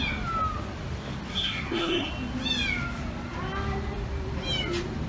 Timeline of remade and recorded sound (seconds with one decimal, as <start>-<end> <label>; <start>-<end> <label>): 0.0-1.3 recorded; 1.3-2.1 remade; 2.1-5.1 recorded